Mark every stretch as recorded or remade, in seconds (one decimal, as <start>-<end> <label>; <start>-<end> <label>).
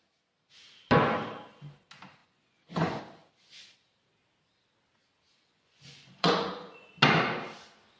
0.0-2.2 recorded; 2.2-3.0 remade; 3.0-5.3 recorded; 5.3-6.9 remade; 6.9-8.0 recorded